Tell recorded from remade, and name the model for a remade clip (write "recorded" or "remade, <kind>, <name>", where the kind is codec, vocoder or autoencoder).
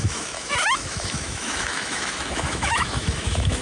remade, autoencoder, DAC-VAE